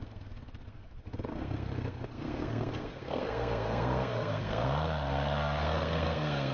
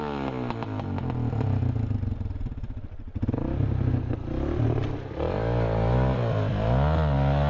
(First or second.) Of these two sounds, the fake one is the first